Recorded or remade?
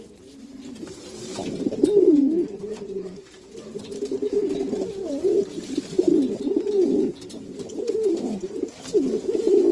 remade